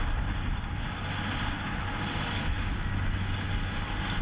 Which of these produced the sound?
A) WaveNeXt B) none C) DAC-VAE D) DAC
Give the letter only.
B